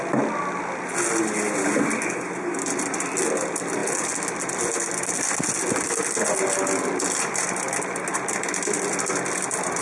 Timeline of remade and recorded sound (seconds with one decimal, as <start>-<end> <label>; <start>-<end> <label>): 0.0-9.8 recorded